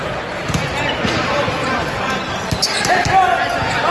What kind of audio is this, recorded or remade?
recorded